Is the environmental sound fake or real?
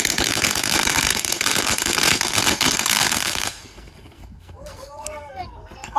fake